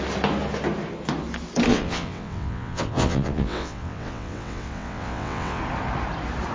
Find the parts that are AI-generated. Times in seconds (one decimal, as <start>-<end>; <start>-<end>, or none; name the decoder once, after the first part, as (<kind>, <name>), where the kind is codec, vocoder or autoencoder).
1.7-5.6 (vocoder, WaveNeXt)